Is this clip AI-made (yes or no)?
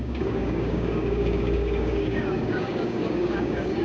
yes